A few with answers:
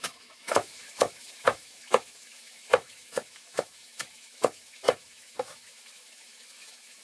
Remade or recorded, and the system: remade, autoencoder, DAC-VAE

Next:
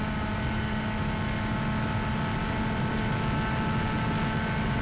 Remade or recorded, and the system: recorded